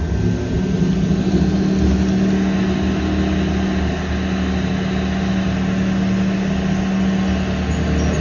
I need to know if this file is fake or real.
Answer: real